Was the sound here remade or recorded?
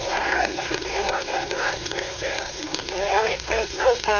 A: remade